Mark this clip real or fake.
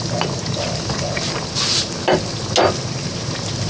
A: real